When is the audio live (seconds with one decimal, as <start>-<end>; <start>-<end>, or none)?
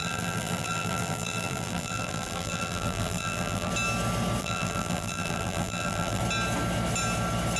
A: 3.7-4.4; 6.2-7.6